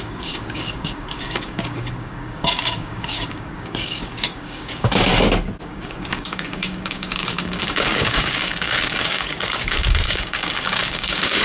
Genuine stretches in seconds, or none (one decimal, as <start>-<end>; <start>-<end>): 5.1-5.7